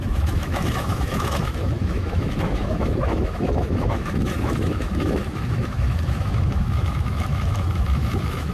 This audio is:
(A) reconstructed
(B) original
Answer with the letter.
A